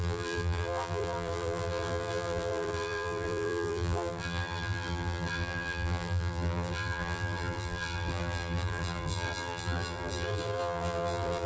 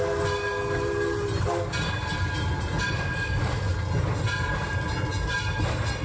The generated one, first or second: first